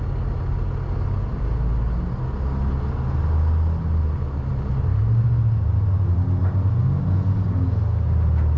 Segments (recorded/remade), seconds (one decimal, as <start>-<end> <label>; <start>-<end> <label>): 0.0-8.6 recorded